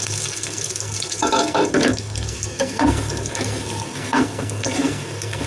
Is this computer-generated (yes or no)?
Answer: yes